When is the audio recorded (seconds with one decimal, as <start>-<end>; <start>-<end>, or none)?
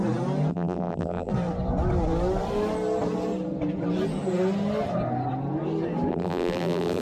0.0-0.5; 1.3-6.1